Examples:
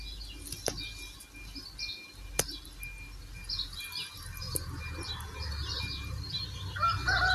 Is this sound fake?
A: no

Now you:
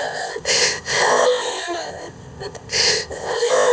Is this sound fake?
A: yes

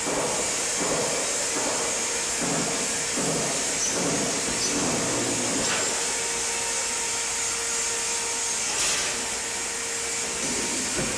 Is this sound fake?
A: no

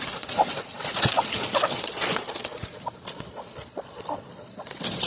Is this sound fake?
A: yes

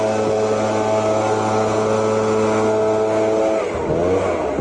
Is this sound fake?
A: no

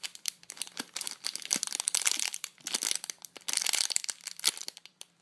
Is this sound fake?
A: yes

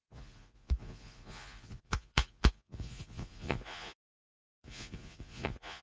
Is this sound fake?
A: yes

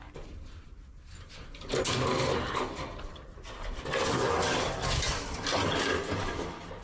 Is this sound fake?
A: no